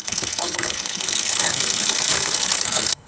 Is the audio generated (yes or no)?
yes